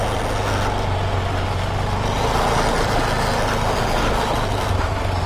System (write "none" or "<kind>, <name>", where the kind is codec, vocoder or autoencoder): none